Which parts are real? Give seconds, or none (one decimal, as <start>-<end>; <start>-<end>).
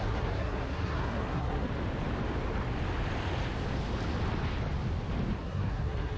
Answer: 1.7-5.4